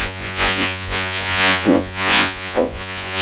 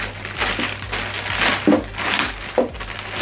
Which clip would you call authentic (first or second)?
second